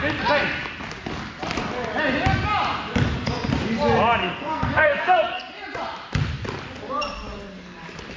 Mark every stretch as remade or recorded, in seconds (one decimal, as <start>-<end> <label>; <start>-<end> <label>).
0.0-4.2 recorded; 4.2-5.5 remade; 5.5-8.2 recorded